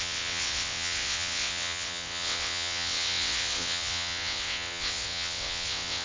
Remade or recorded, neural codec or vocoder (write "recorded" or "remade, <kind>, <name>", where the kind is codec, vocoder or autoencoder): remade, vocoder, WaveNeXt